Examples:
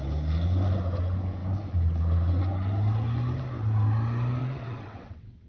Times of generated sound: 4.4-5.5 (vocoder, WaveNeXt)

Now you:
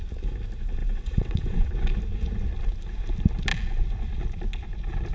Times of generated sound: 0.8-1.7 (vocoder, WaveNeXt)